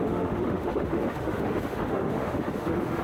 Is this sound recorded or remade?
remade